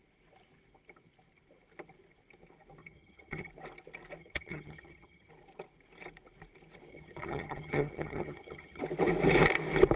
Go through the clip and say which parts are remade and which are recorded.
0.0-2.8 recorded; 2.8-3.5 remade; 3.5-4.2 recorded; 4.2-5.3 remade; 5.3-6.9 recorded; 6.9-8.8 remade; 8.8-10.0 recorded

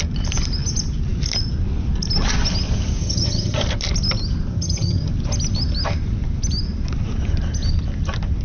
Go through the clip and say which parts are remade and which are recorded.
0.0-3.0 recorded; 3.0-3.6 remade; 3.6-4.5 recorded; 4.5-5.1 remade; 5.1-8.4 recorded